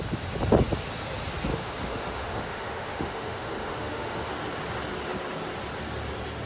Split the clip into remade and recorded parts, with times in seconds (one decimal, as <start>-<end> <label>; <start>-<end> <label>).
0.0-1.5 recorded; 1.5-4.3 remade; 4.3-6.5 recorded